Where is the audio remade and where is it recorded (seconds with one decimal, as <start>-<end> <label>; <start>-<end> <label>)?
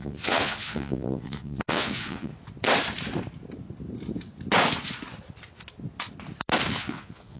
0.0-2.3 remade; 2.3-6.7 recorded; 6.7-7.4 remade